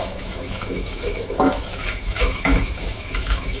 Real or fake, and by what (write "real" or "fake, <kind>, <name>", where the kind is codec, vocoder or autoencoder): fake, autoencoder, DAC-VAE